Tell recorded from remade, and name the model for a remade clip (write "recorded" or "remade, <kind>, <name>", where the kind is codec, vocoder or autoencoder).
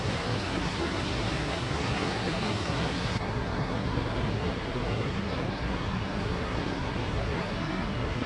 remade, codec, SNAC